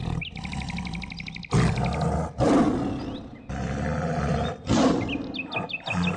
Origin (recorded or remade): recorded